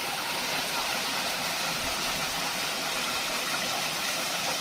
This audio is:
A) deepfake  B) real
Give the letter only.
A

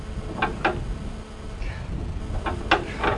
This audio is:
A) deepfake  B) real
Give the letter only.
B